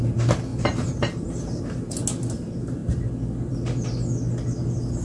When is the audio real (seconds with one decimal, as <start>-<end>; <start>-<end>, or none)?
0.0-0.5; 1.6-5.0